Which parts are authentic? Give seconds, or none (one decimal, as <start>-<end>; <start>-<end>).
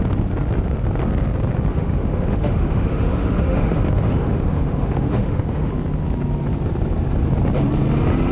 0.0-1.7; 5.7-8.3